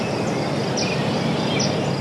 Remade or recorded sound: recorded